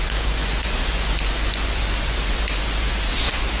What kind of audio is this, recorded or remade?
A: remade